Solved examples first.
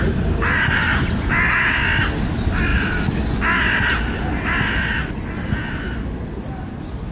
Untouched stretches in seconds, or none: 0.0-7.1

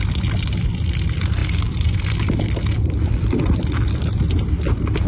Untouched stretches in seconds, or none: 0.0-5.1